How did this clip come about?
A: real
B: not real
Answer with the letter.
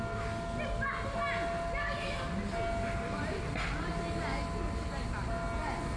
A